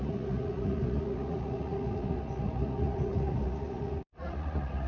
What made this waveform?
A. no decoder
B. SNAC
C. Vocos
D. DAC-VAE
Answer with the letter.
C